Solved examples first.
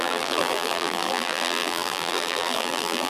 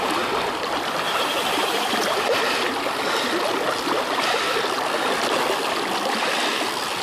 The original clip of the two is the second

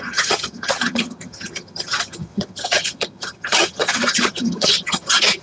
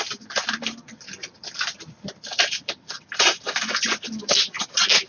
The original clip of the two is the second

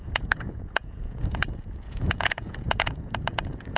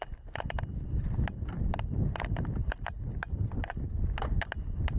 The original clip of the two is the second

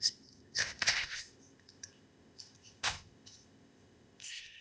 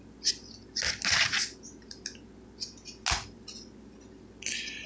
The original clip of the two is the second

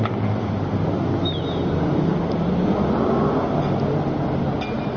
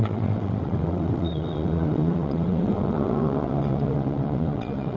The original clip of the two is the first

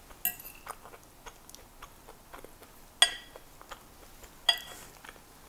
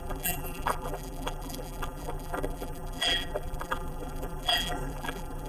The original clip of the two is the first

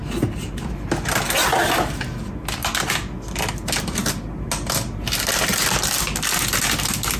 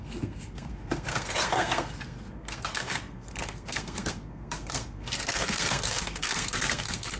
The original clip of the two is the first